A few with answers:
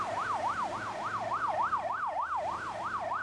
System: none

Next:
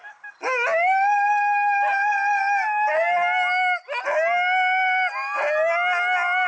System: none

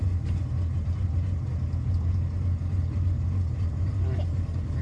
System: none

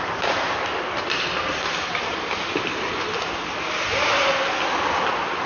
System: none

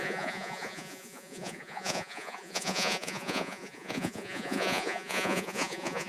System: vocoder, Vocos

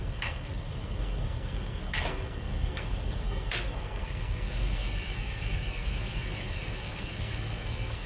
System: codec, SNAC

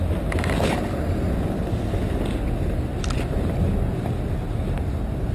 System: none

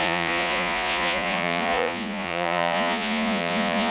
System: vocoder, Vocos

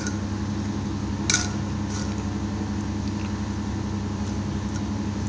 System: none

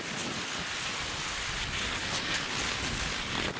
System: none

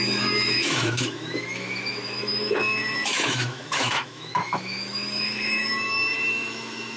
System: autoencoder, DAC-VAE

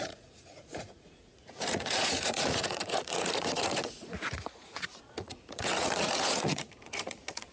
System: vocoder, Vocos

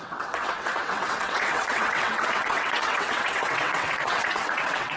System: vocoder, WaveNeXt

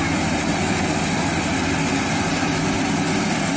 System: none